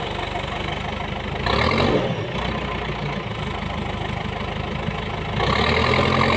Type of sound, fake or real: real